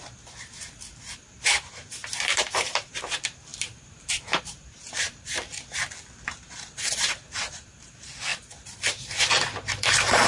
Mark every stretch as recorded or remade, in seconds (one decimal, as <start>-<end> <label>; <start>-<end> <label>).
0.0-5.5 remade; 5.5-6.3 recorded; 6.3-10.3 remade